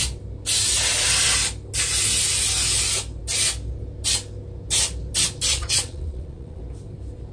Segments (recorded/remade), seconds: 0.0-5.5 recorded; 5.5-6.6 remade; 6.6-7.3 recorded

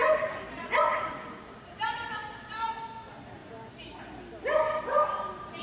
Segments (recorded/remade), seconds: 0.0-5.6 recorded

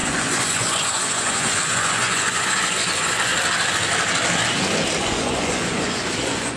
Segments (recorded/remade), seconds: 0.0-3.3 remade; 3.3-5.0 recorded; 5.0-6.6 remade

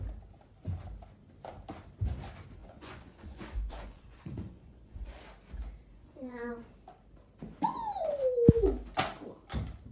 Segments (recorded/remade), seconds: 0.0-2.6 recorded; 2.6-5.2 remade; 5.2-5.9 recorded; 5.9-6.5 remade; 6.5-9.9 recorded

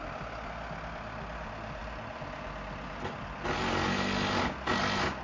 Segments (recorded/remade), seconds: 0.0-5.2 recorded